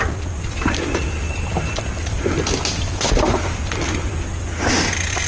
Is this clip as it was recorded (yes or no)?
yes